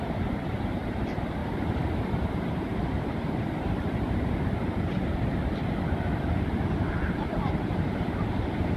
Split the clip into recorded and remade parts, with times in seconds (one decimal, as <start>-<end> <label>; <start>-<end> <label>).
0.0-1.4 remade; 1.4-2.3 recorded; 2.3-5.4 remade; 5.4-7.2 recorded; 7.2-8.8 remade